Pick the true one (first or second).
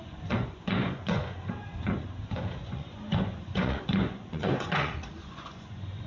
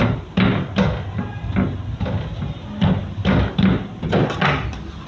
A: second